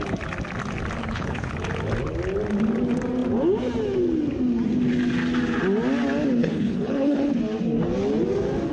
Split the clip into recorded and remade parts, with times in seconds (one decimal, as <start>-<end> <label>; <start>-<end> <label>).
0.0-1.0 recorded; 1.0-1.5 remade; 1.5-6.4 recorded; 6.4-7.4 remade; 7.4-8.7 recorded